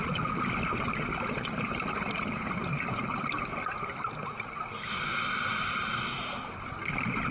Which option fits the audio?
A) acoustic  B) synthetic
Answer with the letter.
A